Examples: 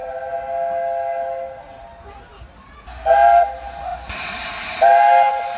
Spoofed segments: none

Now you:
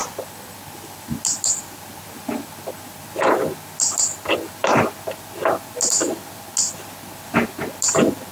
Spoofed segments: none

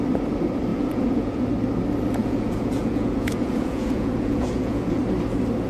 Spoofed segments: 0.7-1.5 (vocoder, Vocos); 2.2-5.0

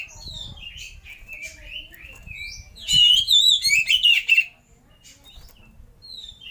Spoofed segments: 2.2-4.3 (vocoder, Vocos)

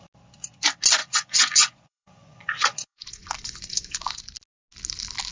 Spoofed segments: 1.0-4.2 (vocoder, Vocos)